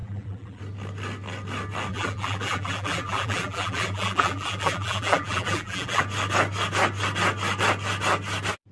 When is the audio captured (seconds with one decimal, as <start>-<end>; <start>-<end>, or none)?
0.6-1.9; 6.0-8.7